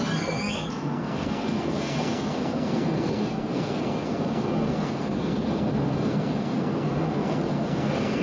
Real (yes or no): no